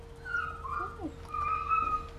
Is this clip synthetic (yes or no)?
no